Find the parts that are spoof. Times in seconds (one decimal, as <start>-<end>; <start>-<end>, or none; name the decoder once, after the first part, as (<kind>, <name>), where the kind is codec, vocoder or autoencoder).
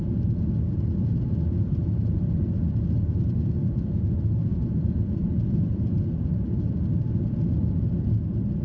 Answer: 4.5-5.8 (vocoder, Vocos)